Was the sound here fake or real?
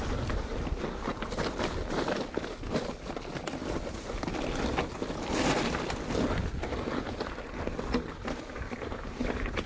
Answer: real